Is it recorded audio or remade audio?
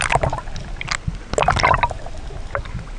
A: recorded